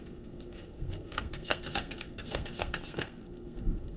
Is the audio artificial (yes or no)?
yes